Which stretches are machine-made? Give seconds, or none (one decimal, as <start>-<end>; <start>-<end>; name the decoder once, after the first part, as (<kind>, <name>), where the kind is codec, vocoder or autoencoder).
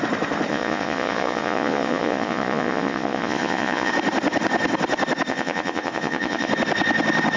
0.5-3.9 (vocoder, Vocos); 5.3-6.5